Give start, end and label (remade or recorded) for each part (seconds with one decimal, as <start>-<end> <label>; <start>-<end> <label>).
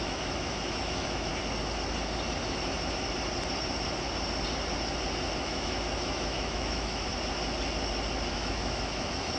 0.0-1.3 remade; 1.3-5.4 recorded; 5.4-7.1 remade; 7.1-8.3 recorded; 8.3-9.4 remade